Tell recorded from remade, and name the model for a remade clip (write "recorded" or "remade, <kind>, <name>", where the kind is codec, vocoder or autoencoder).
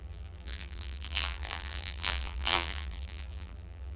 remade, vocoder, BigVGAN v2